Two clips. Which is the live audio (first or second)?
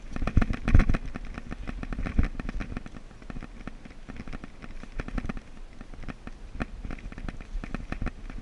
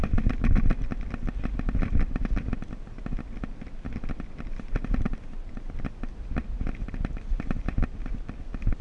first